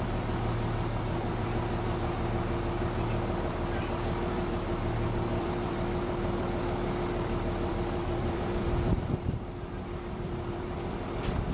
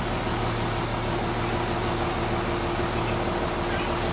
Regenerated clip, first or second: first